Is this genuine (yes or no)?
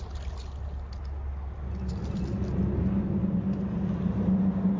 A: yes